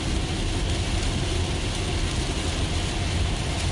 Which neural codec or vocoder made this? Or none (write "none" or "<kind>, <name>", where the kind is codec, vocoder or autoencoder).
none